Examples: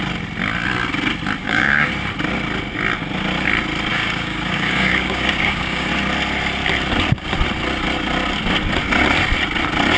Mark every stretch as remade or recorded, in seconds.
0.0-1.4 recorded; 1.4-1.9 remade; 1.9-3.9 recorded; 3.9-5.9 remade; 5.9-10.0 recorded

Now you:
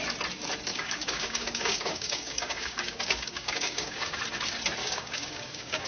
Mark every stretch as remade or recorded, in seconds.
0.0-0.7 recorded; 0.7-4.2 remade; 4.2-4.8 recorded; 4.8-5.9 remade